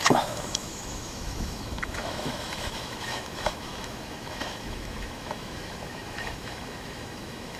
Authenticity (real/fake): fake